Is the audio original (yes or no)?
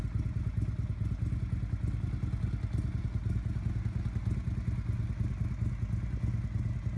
yes